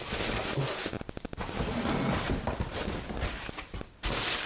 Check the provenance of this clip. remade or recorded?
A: recorded